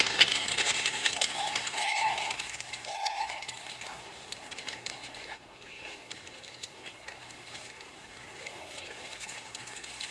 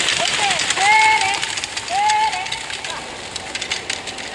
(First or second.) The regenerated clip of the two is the first